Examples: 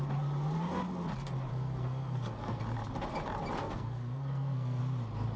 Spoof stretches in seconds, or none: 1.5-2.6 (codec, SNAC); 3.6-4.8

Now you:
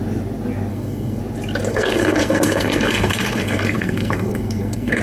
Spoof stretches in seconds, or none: 0.7-1.2 (codec, SNAC); 1.7-5.0

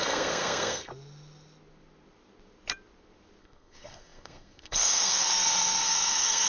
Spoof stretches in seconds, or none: 0.0-0.9 (codec, SNAC); 3.4-6.5

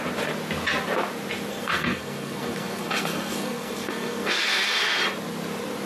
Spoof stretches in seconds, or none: 1.5-5.0 (codec, SNAC)

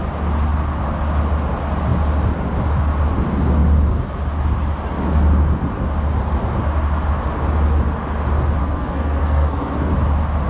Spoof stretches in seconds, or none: 8.6-9.9 (codec, SNAC)